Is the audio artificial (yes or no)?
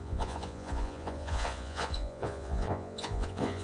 yes